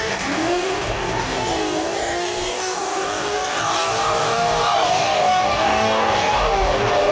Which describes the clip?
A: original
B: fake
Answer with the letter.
B